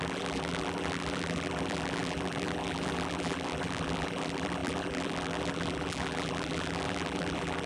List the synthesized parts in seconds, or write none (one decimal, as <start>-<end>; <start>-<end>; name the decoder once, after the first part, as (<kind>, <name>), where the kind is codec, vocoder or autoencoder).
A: 0.0-7.7 (vocoder, BigVGAN v2)